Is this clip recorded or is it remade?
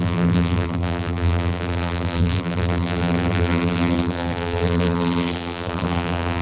remade